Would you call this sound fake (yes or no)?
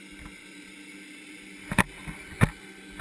no